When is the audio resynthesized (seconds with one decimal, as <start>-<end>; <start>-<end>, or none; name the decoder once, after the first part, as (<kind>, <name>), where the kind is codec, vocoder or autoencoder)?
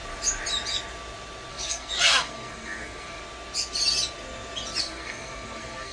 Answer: 1.5-3.2 (codec, SNAC); 4.8-5.9